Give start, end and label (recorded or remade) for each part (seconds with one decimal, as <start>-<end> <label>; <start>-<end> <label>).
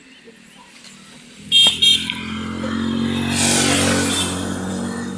0.0-5.2 recorded